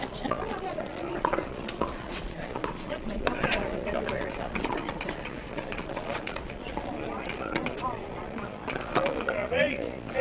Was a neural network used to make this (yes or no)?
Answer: yes